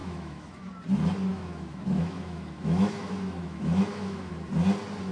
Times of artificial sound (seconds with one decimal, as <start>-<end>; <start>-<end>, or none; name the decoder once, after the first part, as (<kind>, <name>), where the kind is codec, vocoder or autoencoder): 0.0-0.7 (autoencoder, DAC-VAE); 1.3-4.3